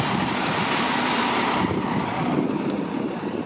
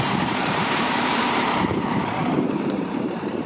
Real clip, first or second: first